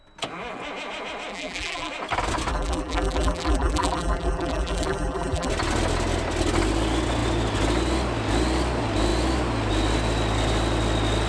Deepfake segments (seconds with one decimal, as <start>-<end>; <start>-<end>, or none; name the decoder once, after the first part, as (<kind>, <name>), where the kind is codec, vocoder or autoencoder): 1.3-1.9 (vocoder, BigVGAN v2); 2.5-5.5